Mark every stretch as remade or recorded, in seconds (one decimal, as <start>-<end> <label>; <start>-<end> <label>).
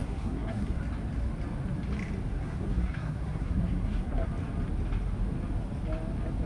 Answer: 0.0-0.8 remade; 0.8-2.3 recorded; 2.3-4.3 remade; 4.3-6.5 recorded